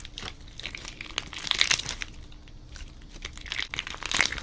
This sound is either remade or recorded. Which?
recorded